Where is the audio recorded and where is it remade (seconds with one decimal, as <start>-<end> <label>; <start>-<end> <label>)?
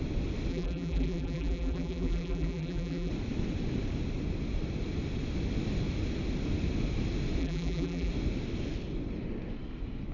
0.0-0.5 recorded; 0.5-3.1 remade; 3.1-7.4 recorded; 7.4-8.1 remade; 8.1-10.1 recorded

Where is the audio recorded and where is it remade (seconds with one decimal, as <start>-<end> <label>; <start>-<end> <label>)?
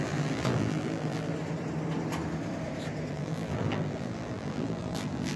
0.0-1.3 remade; 1.3-3.1 recorded; 3.1-5.4 remade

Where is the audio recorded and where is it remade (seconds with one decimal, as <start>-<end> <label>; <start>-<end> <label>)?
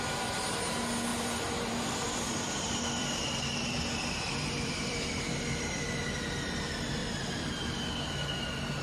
0.0-1.1 recorded; 1.1-5.8 remade; 5.8-7.0 recorded; 7.0-7.8 remade; 7.8-8.8 recorded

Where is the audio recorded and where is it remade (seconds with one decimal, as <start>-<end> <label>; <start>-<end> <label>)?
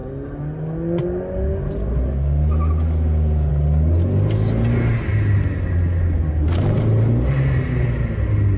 0.0-8.6 recorded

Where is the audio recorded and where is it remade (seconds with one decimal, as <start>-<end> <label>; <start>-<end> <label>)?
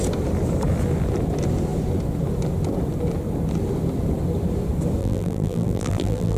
0.0-5.0 recorded; 5.0-6.4 remade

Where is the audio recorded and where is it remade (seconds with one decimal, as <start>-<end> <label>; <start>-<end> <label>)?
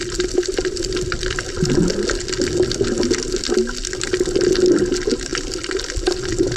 0.0-1.0 remade; 1.0-6.6 recorded